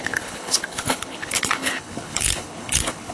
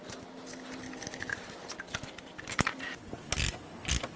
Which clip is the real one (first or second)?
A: second